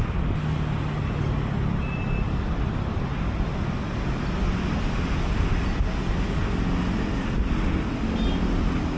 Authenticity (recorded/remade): recorded